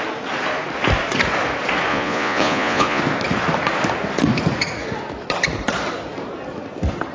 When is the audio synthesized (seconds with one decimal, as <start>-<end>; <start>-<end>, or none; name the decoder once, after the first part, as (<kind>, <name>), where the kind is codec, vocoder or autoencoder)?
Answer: 1.9-3.0 (vocoder, Vocos)